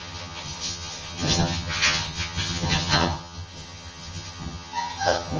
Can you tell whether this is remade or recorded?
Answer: remade